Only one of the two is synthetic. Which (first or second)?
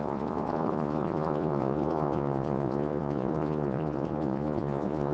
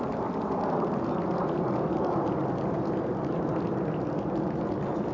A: first